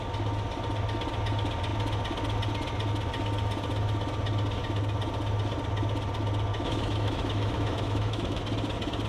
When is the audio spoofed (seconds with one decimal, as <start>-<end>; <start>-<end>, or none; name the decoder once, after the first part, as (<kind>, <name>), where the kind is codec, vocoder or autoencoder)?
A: 6.5-8.4 (autoencoder, DAC-VAE)

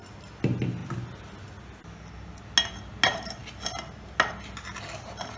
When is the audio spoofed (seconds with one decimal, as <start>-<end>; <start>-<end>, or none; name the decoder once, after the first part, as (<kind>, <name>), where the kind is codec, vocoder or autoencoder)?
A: none

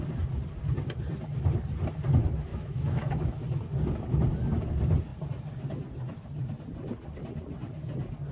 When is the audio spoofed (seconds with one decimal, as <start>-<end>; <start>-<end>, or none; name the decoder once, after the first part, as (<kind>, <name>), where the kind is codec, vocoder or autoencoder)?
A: 2.5-3.3 (autoencoder, DAC-VAE)

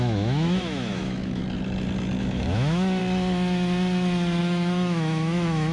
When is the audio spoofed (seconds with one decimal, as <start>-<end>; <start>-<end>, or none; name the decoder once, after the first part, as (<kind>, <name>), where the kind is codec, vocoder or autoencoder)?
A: 0.0-1.4 (autoencoder, DAC-VAE); 2.2-3.0; 4.4-5.7